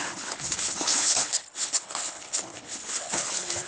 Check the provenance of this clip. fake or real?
fake